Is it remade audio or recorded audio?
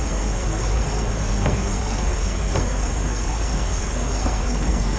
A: remade